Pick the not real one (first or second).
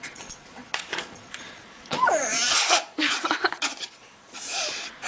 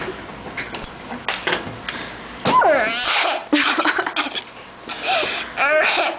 first